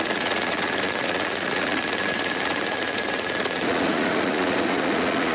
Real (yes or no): no